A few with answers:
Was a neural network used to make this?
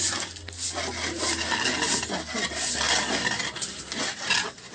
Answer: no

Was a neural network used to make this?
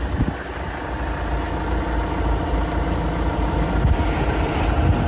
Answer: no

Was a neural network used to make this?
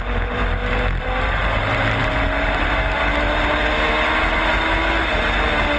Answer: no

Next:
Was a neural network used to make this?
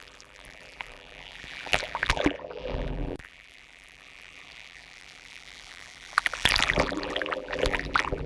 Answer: yes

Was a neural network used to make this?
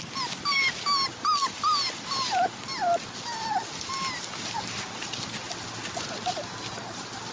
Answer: no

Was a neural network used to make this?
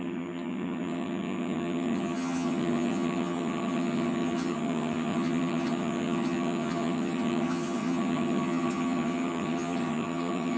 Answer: yes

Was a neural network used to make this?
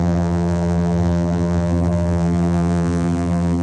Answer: yes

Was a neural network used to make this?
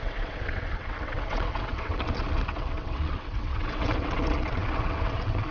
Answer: yes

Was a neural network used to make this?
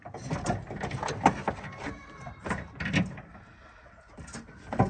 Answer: no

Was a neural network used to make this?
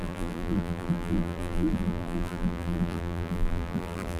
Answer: yes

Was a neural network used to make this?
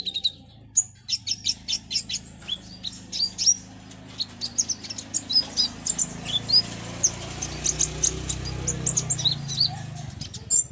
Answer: no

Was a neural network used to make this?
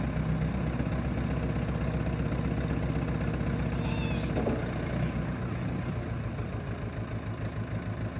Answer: no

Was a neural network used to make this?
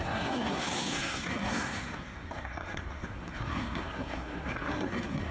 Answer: yes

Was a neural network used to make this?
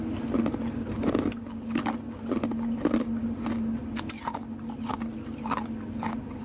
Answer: no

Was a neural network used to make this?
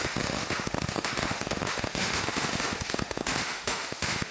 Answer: yes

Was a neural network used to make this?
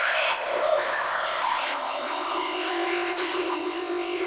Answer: yes